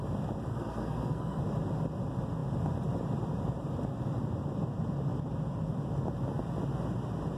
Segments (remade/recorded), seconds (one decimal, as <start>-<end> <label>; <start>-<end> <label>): 0.0-0.5 recorded; 0.5-1.4 remade; 1.4-7.4 recorded